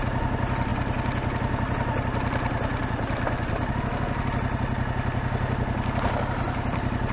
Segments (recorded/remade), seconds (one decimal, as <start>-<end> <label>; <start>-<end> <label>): 0.0-7.1 recorded